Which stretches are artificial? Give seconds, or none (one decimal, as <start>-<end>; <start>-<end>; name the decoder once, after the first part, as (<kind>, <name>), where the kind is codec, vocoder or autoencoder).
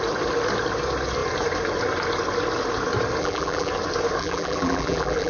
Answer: 3.2-3.7 (vocoder, BigVGAN v2); 4.2-5.3